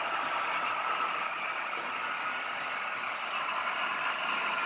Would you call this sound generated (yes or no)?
no